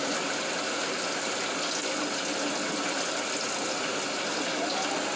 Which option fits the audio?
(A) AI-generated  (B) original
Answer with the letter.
B